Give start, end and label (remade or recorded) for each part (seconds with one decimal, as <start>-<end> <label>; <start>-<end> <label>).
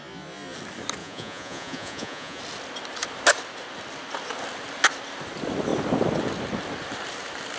0.0-1.0 recorded; 1.0-2.4 remade; 2.4-7.6 recorded